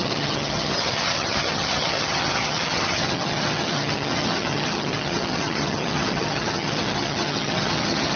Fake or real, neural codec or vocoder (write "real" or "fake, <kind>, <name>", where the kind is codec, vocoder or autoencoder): fake, vocoder, HiFi-GAN